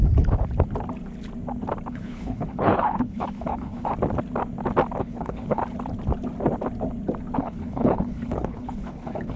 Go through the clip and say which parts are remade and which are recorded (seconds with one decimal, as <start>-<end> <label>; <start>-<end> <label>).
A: 0.0-1.9 recorded; 1.9-3.9 remade; 3.9-5.0 recorded; 5.0-5.6 remade; 5.6-7.4 recorded; 7.4-9.4 remade